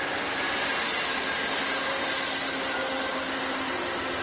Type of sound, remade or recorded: recorded